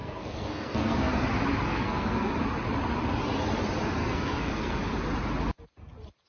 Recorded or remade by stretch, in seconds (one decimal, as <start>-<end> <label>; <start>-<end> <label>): 0.0-1.1 remade; 1.1-1.7 recorded; 1.7-2.3 remade; 2.3-4.0 recorded; 4.0-4.8 remade; 4.8-6.3 recorded